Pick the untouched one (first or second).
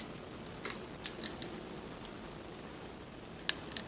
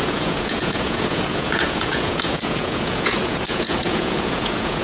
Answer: first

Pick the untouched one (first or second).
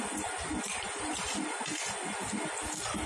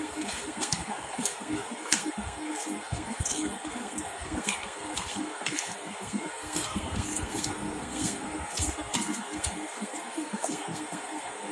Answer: first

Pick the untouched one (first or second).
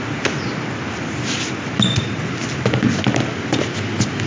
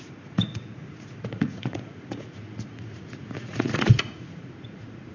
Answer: first